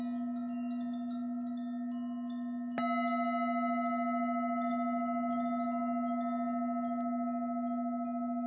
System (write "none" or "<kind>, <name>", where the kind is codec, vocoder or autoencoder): none